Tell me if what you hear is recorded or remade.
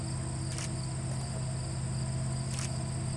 recorded